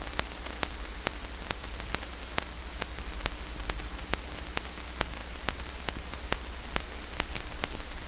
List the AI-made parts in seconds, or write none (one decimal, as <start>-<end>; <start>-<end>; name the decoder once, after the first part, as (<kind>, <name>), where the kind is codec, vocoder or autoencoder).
none